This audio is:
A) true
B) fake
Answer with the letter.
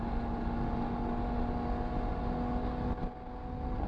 A